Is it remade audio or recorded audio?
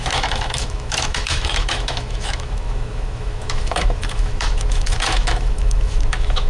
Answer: remade